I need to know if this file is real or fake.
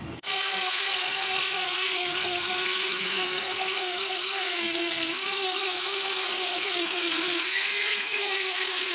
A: fake